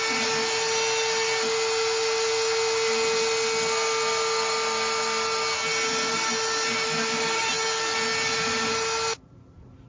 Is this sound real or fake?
real